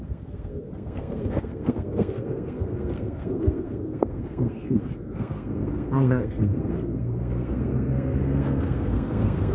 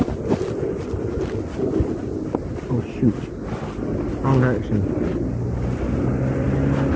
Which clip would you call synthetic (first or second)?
first